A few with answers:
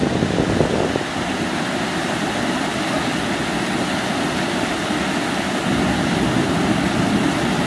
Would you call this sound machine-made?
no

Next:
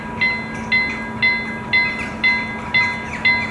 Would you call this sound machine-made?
no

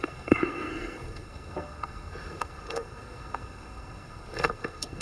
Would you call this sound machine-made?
yes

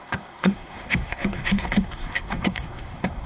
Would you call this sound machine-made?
yes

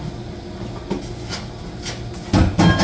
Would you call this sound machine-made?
no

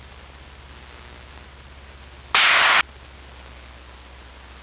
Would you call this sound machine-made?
no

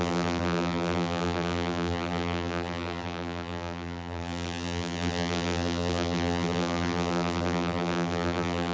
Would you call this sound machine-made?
yes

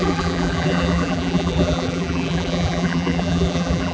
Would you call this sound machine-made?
yes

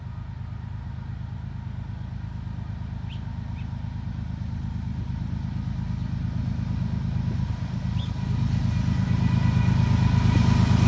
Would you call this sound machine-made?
no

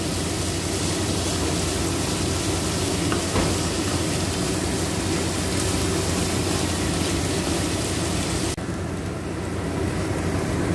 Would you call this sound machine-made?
no